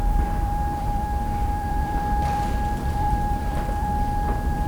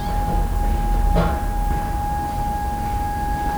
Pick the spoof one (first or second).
first